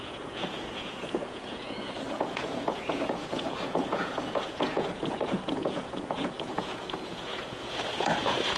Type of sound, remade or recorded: remade